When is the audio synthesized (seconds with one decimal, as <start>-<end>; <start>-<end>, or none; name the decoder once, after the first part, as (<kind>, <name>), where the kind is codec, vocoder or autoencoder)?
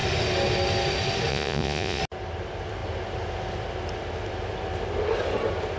1.3-2.0 (vocoder, Vocos)